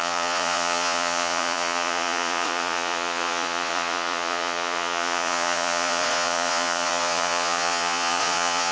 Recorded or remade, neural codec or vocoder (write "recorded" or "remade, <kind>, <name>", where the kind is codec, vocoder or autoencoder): remade, vocoder, Vocos